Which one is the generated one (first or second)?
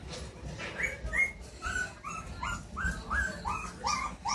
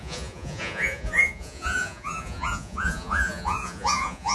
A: second